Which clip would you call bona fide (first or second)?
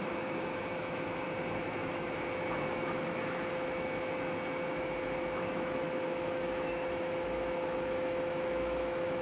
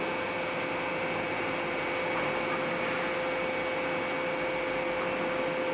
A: second